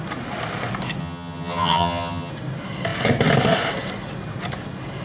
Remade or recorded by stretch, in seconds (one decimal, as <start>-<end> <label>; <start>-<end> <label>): 0.0-1.0 recorded; 1.0-2.3 remade; 2.3-5.0 recorded